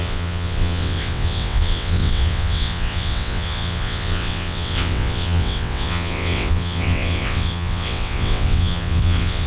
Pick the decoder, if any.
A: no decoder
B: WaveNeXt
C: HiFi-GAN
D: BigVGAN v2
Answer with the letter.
B